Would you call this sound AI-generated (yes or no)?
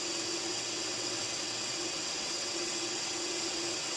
yes